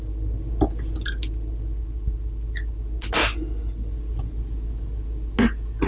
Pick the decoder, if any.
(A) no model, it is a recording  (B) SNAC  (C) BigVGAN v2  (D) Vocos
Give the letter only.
A